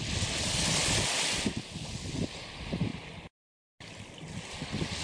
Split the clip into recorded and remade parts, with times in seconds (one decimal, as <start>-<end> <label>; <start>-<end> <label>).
0.0-5.0 recorded